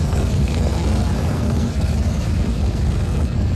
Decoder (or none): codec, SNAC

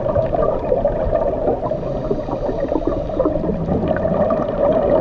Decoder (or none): none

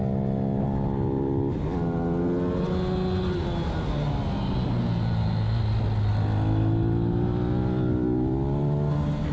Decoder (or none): none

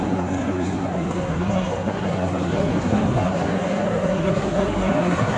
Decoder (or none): codec, SNAC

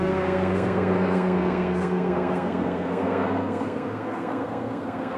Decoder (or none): codec, SNAC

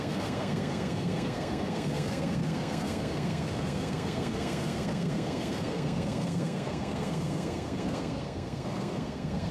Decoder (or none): codec, SNAC